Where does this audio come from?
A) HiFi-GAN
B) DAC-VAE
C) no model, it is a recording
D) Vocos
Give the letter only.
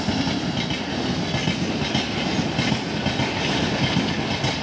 C